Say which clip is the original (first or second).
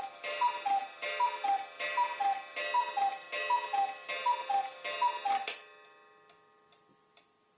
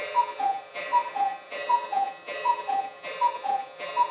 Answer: first